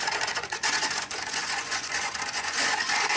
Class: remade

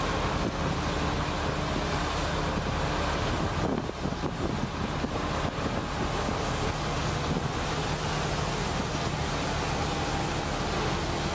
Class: recorded